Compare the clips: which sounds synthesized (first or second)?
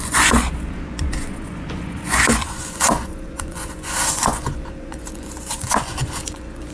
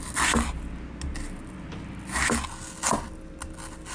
first